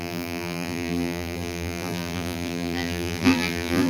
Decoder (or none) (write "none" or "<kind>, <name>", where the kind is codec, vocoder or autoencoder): vocoder, BigVGAN v2